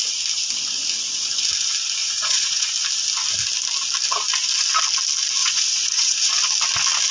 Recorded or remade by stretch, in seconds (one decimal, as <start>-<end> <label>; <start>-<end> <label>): 0.0-2.0 recorded; 2.0-2.7 remade; 2.7-5.4 recorded; 5.4-6.3 remade; 6.3-7.1 recorded